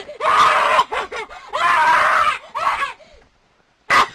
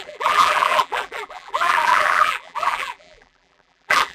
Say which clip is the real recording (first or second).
first